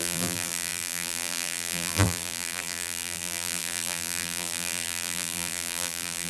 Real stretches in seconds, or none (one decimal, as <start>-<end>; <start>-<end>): none